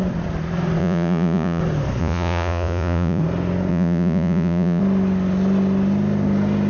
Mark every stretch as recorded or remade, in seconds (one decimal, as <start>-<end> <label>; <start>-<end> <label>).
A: 0.0-0.8 recorded; 0.8-1.6 remade; 1.6-2.0 recorded; 2.0-3.2 remade; 3.2-3.7 recorded; 3.7-4.8 remade; 4.8-6.7 recorded